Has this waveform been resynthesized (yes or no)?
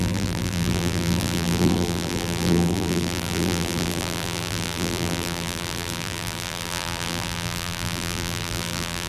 yes